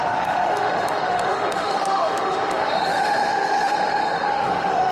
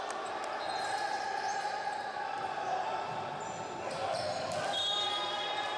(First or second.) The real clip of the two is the second